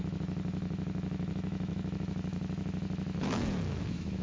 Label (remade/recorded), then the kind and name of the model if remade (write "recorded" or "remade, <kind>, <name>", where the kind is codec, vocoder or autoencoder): remade, autoencoder, DAC-VAE